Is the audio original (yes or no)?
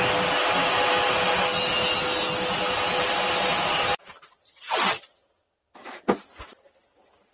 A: yes